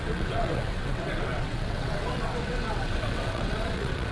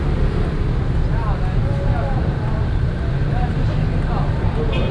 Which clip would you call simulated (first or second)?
first